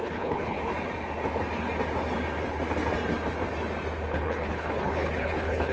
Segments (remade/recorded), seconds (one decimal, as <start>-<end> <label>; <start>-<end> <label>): 0.0-0.7 remade; 0.7-4.1 recorded; 4.1-5.7 remade